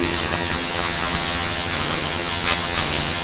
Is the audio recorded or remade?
remade